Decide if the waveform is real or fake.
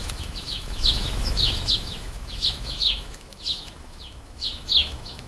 fake